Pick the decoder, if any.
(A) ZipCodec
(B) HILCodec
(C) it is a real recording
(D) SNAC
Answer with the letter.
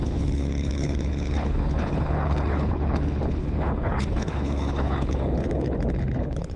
B